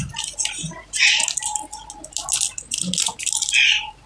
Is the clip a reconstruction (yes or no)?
no